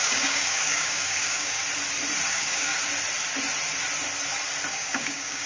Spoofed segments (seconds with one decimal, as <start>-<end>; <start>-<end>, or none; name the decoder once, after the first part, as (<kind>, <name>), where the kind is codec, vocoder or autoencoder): 0.0-1.6 (codec, DAC); 2.3-2.7; 4.7-5.5